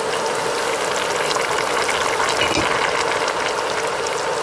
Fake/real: real